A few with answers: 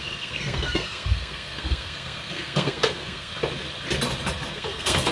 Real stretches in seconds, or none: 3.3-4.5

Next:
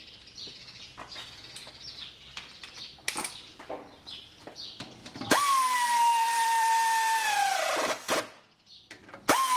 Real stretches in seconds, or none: 0.0-5.0; 8.4-9.6

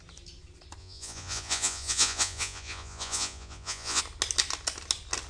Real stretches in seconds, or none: 0.0-0.8; 4.0-5.3